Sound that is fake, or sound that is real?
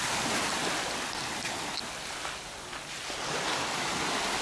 real